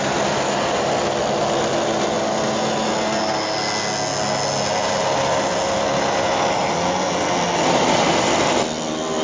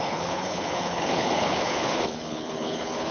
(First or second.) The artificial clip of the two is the second